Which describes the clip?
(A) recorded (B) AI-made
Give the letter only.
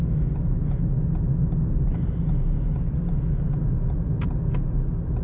A